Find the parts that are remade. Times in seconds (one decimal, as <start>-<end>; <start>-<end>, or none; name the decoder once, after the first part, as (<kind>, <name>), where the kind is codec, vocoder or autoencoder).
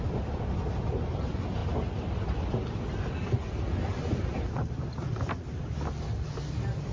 1.6-5.7 (vocoder, BigVGAN v2)